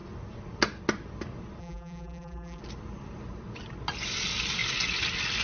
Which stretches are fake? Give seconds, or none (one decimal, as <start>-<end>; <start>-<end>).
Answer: 1.6-2.6

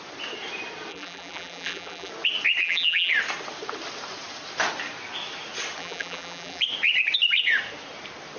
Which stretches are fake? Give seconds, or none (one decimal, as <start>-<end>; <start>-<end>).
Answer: 0.9-2.1; 2.6-3.1; 5.8-6.6

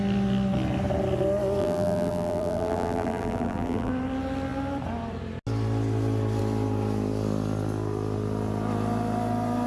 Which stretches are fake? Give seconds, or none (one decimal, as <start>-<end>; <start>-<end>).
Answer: 1.6-3.9

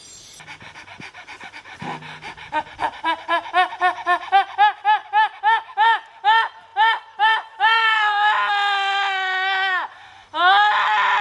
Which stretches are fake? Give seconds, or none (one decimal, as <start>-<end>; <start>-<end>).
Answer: 6.7-8.5

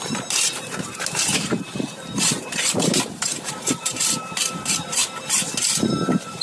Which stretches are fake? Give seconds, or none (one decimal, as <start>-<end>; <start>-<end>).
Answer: 0.0-5.0; 5.7-6.4

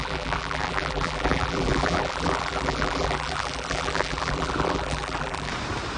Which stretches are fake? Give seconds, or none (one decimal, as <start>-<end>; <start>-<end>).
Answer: 0.0-5.5